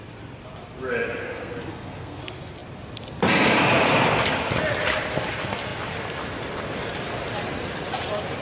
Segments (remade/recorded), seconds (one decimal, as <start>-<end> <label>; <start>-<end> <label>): 0.0-1.2 recorded; 1.2-2.2 remade; 2.2-8.4 recorded